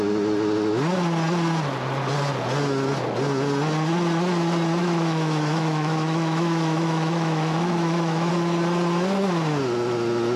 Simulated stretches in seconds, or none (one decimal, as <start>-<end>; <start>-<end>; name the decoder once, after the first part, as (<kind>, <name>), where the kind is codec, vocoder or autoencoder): 4.8-8.3 (autoencoder, DAC-VAE)